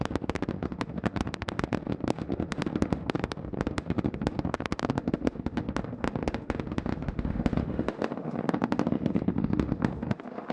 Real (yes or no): no